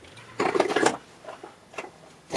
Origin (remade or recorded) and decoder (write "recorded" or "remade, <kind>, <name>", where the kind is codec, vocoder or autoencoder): recorded